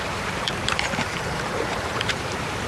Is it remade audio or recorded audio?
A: remade